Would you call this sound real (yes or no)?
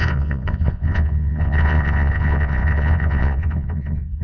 no